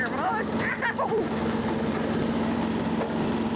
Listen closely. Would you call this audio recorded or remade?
recorded